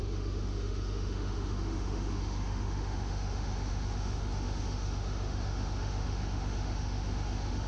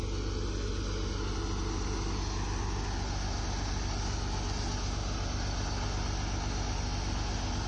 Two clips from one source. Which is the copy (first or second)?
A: first